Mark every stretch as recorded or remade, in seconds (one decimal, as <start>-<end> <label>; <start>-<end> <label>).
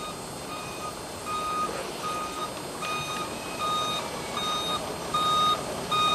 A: 0.0-2.4 remade; 2.4-6.1 recorded